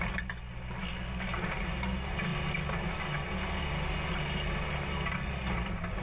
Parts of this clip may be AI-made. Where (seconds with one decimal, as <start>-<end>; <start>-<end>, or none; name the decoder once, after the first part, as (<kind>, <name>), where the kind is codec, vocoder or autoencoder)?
none